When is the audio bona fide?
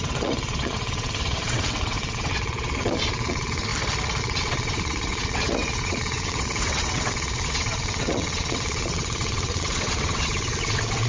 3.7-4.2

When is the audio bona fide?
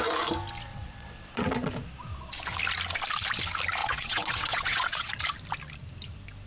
0.0-0.7; 1.7-3.8; 5.1-6.5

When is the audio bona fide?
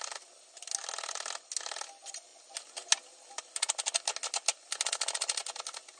0.0-6.0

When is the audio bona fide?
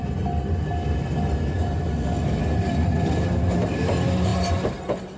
0.0-5.2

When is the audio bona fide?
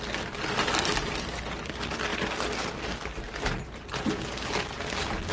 0.0-5.3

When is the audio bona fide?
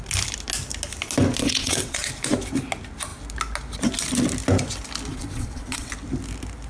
0.0-1.4; 2.1-5.1; 5.9-6.7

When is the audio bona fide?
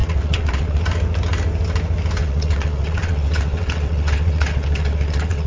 0.8-2.2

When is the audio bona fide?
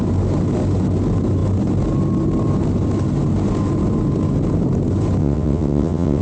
0.0-5.2